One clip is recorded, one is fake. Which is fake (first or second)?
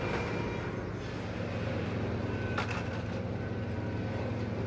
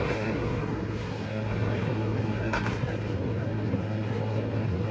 second